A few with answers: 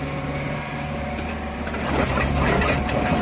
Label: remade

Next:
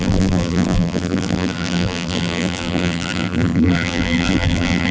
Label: remade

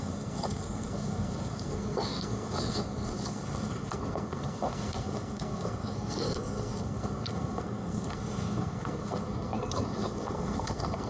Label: remade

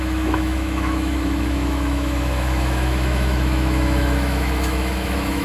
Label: remade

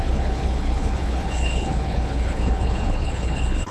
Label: remade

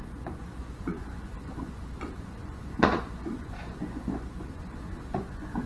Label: remade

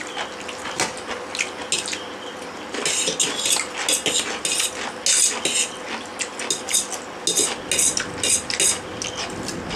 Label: recorded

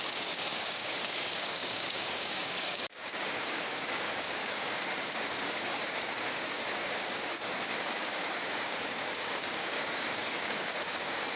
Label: remade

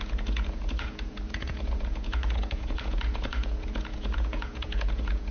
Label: remade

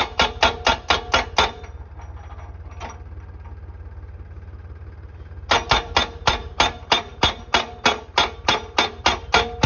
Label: recorded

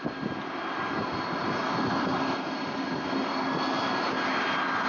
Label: recorded